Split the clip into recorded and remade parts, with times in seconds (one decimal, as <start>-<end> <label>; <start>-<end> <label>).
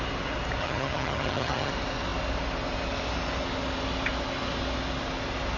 0.0-0.6 recorded; 0.6-1.7 remade; 1.7-5.6 recorded